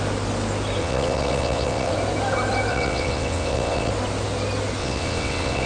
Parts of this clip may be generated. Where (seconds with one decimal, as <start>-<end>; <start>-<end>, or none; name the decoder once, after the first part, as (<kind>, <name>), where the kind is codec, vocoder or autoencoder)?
0.8-1.9 (vocoder, WaveNeXt); 2.7-3.9; 4.8-5.7